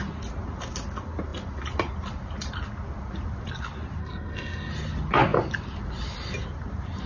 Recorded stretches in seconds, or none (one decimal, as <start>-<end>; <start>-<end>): 0.0-4.0; 4.7-7.1

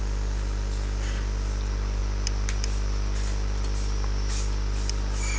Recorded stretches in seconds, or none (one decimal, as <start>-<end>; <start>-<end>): 0.0-5.4